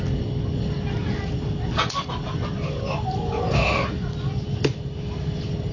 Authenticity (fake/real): real